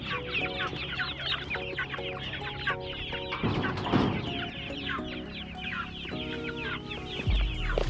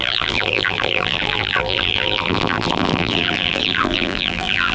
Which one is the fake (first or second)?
second